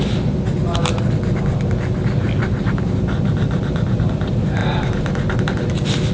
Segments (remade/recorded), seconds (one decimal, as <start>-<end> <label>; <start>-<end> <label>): 0.0-6.1 recorded